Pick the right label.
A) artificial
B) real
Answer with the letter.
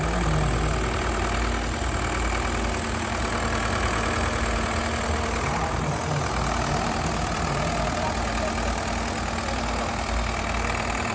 B